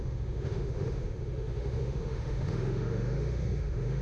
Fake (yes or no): yes